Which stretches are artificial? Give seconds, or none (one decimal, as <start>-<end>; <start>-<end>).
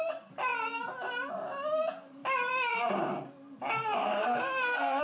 4.0-5.0